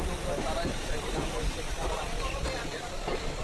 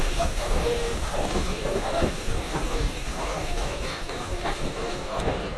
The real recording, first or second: first